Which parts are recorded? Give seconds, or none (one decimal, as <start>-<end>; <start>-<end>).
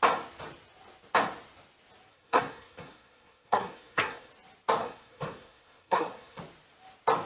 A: 0.0-2.1; 4.3-4.8; 6.4-7.3